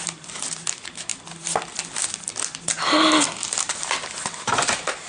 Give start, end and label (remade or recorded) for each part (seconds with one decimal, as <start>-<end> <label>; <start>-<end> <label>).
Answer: 0.0-1.1 remade; 1.1-4.2 recorded; 4.2-5.1 remade